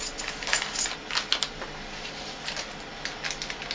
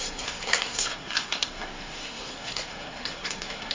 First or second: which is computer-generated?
second